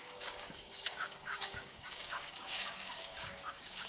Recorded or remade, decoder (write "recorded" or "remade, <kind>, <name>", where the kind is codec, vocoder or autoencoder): remade, codec, DAC